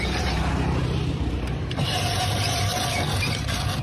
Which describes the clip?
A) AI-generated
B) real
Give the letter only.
B